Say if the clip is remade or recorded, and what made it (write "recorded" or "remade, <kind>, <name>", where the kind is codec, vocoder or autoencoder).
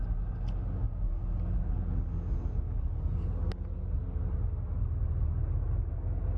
recorded